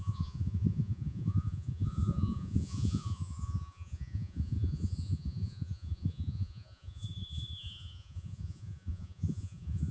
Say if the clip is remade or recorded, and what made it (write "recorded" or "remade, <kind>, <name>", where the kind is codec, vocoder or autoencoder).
remade, vocoder, Vocos